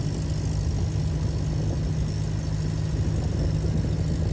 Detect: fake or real real